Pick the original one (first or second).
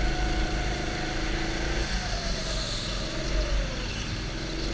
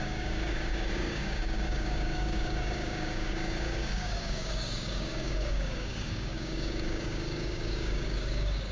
first